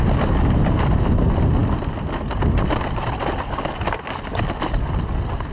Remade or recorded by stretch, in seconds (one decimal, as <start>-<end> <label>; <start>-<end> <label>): 0.0-5.5 recorded